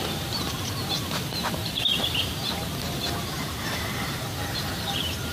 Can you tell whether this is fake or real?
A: fake